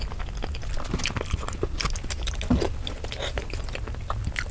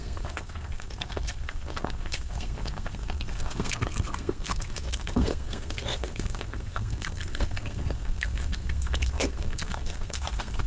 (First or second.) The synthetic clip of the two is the second